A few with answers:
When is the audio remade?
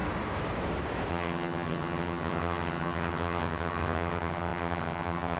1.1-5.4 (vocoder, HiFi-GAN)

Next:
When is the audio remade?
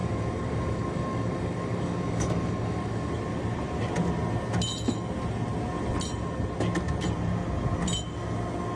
0.0-3.1 (codec, DAC)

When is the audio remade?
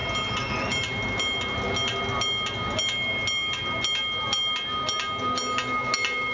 none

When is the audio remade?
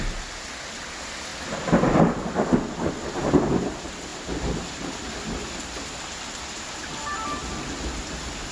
none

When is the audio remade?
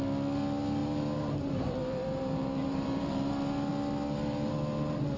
0.8-3.3 (vocoder, BigVGAN v2)